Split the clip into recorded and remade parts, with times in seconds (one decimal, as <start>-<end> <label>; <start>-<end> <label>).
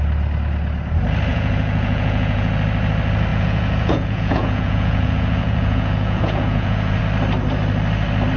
0.0-1.3 recorded; 1.3-2.5 remade; 2.5-3.3 recorded; 3.3-7.0 remade; 7.0-8.4 recorded